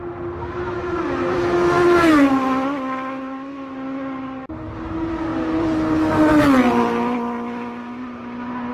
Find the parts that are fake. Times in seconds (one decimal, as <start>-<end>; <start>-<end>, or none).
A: none